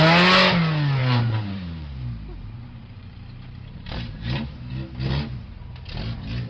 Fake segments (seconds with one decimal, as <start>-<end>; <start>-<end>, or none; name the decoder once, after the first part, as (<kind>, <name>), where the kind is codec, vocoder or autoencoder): 1.0-4.7 (vocoder, BigVGAN v2)